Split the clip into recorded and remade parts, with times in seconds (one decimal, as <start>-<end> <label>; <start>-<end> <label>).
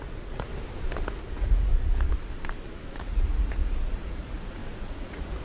0.0-0.5 remade; 0.5-1.2 recorded; 1.2-1.7 remade; 1.7-2.9 recorded; 2.9-5.4 remade